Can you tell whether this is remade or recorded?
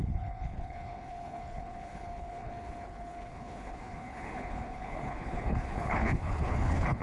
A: remade